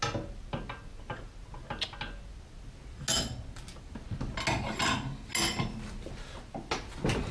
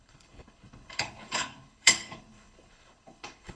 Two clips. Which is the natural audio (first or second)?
first